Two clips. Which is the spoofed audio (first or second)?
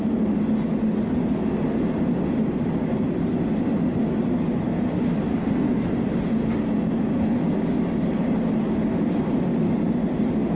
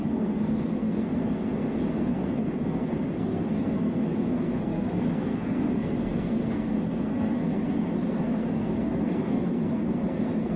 second